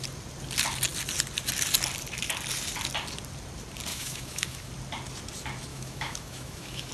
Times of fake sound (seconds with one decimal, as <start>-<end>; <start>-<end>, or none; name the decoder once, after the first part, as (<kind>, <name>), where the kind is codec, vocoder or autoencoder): 3.9-4.7 (autoencoder, DAC-VAE); 5.7-6.9